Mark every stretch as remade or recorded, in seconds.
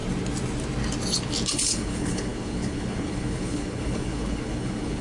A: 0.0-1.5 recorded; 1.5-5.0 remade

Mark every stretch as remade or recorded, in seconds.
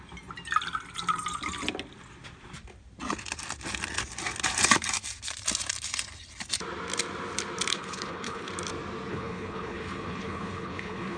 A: 0.0-7.7 recorded; 7.7-8.5 remade; 8.5-9.1 recorded; 9.1-11.2 remade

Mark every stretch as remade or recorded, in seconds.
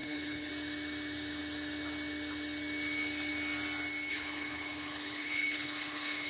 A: 0.0-0.5 remade; 0.5-4.1 recorded; 4.1-6.3 remade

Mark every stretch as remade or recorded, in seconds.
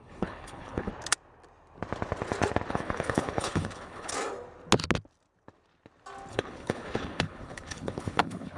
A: 0.0-0.9 remade; 0.9-2.7 recorded; 2.7-4.1 remade; 4.1-6.3 recorded; 6.3-8.6 remade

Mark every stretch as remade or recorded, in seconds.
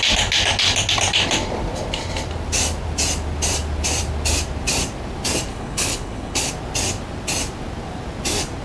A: 0.0-5.5 recorded; 5.5-6.5 remade; 6.5-8.6 recorded